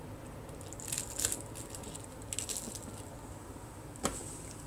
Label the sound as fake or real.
real